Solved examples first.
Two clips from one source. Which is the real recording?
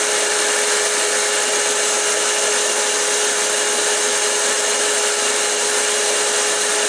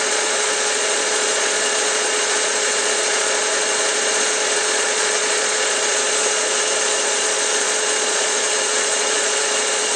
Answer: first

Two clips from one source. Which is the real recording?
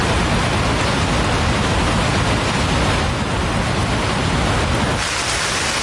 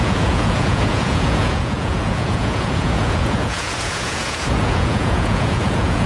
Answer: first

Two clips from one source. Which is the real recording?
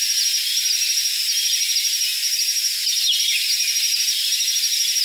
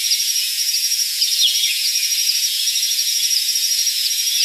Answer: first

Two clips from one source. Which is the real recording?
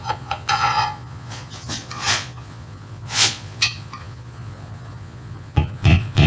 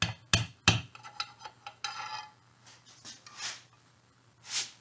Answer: second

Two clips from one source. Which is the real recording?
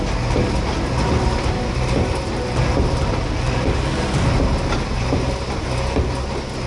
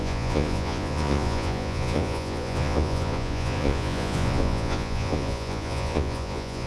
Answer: first